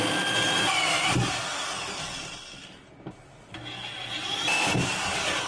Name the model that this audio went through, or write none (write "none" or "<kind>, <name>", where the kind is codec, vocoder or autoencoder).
none